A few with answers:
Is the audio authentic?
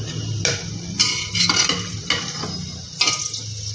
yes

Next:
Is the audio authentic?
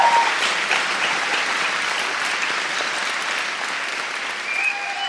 yes